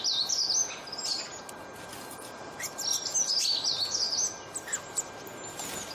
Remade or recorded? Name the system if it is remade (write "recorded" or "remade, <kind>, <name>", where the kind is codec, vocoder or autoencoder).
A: recorded